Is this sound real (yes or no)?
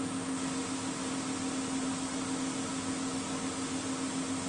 yes